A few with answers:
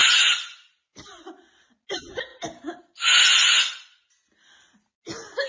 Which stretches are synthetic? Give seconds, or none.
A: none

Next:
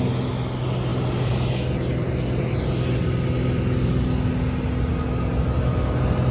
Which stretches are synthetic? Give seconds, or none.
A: none

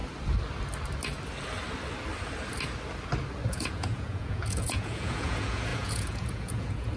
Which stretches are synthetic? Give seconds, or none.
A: 3.5-7.0 (vocoder, Vocos)

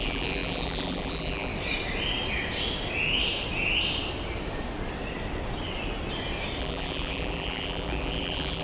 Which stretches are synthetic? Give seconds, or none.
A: 0.0-1.5 (vocoder, BigVGAN v2); 6.6-8.6

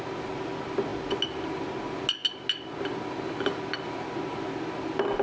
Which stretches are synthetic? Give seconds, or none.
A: none

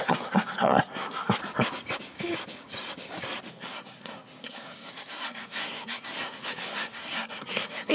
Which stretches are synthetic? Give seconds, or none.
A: 0.0-1.4 (codec, SNAC); 3.5-7.9

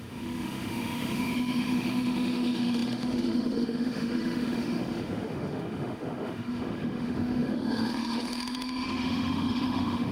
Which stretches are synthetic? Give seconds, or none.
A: 0.0-10.1 (autoencoder, DAC-VAE)

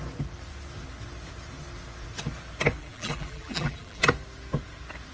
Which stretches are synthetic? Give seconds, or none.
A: 2.8-4.0 (vocoder, BigVGAN v2)